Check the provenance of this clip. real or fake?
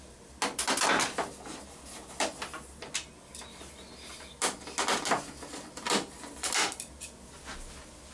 real